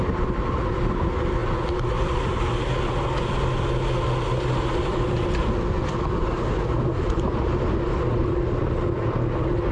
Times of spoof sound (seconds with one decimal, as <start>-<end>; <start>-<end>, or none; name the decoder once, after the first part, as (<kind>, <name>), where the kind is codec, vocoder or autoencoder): none